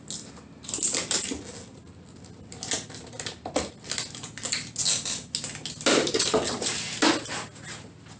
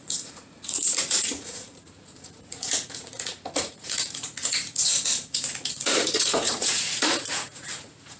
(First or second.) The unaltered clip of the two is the first